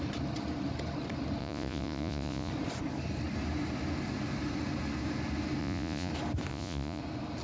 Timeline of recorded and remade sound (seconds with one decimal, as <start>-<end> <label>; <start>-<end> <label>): 0.0-1.4 recorded; 1.4-2.5 remade; 2.5-5.6 recorded; 5.6-6.1 remade; 6.1-6.5 recorded; 6.5-7.0 remade; 7.0-7.4 recorded

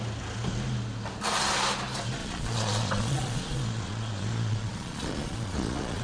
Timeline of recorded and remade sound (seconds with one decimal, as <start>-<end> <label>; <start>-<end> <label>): 0.0-2.2 recorded; 2.2-6.0 remade

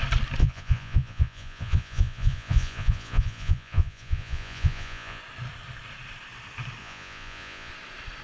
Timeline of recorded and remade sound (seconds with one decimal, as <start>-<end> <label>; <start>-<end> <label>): 0.0-0.4 recorded; 0.4-5.2 remade; 5.2-6.8 recorded; 6.8-7.7 remade; 7.7-8.2 recorded